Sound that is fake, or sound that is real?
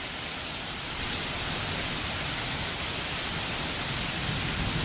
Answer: real